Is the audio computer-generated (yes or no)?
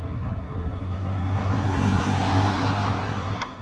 yes